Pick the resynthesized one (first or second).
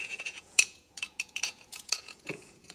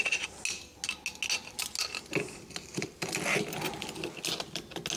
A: first